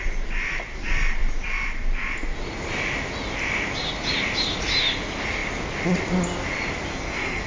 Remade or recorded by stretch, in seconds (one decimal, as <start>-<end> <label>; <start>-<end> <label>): 0.0-6.9 recorded; 6.9-7.5 remade